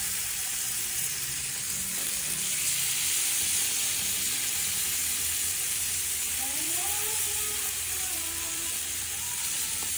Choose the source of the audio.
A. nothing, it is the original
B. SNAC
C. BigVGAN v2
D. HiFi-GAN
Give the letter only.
C